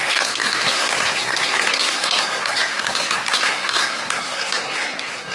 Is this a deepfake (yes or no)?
yes